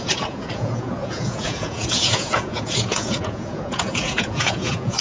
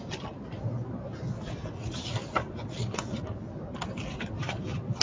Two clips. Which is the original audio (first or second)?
second